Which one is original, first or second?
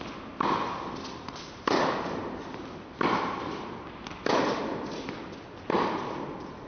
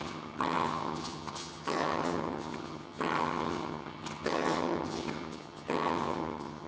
first